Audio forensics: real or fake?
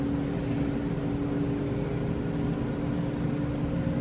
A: real